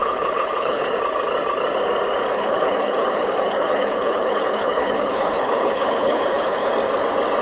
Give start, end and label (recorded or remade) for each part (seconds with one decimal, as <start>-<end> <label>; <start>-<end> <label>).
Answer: 0.0-0.9 remade; 0.9-2.3 recorded; 2.3-6.7 remade; 6.7-7.4 recorded